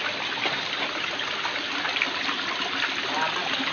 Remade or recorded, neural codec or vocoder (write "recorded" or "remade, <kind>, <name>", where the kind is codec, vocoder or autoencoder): recorded